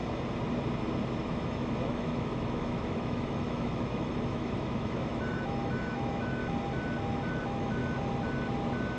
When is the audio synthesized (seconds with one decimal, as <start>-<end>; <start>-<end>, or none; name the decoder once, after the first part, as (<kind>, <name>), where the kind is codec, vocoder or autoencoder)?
1.2-6.4 (autoencoder, DAC-VAE); 7.3-7.8